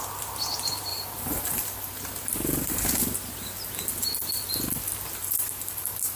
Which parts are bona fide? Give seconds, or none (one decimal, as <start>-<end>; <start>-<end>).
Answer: 0.0-0.9; 1.9-5.2